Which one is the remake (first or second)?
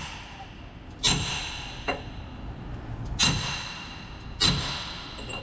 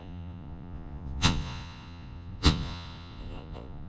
second